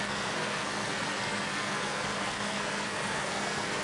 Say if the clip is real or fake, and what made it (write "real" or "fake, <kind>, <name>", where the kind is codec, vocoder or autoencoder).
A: fake, codec, SNAC